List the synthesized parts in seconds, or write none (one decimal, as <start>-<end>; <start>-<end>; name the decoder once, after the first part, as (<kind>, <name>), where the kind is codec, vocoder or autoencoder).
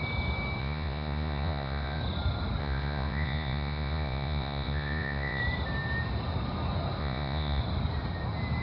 0.6-2.0 (vocoder, Vocos); 2.6-5.4; 7.0-7.6